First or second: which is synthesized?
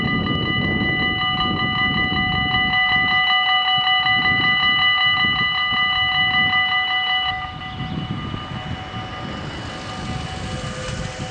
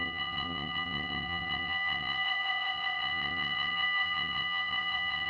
second